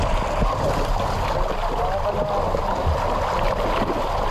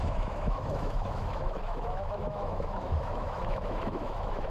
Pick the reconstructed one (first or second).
second